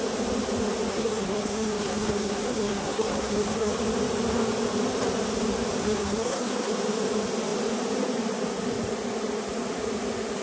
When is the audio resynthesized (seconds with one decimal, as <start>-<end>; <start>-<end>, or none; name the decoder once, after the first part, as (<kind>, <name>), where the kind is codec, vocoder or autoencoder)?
0.9-3.7 (codec, SNAC); 5.8-6.7